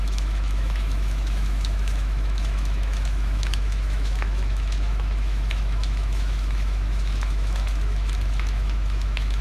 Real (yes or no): no